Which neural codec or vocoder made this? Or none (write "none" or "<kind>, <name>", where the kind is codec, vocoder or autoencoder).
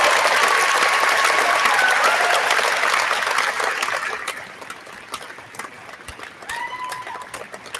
none